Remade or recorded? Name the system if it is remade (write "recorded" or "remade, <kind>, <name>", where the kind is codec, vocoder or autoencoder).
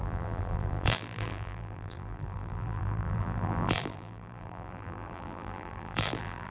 remade, vocoder, BigVGAN v2